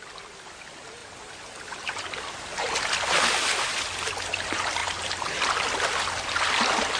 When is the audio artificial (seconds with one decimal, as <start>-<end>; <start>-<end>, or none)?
4.8-5.4